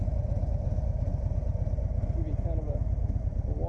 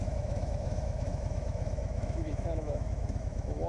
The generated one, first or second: second